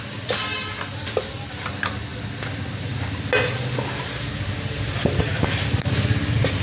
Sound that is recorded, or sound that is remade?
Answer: recorded